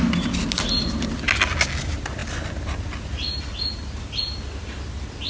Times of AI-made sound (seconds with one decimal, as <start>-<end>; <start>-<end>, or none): none